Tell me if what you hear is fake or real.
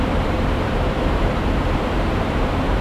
fake